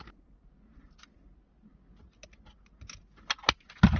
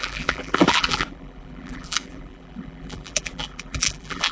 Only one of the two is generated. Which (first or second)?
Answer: second